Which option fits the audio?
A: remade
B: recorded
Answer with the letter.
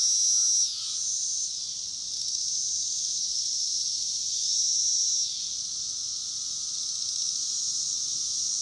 B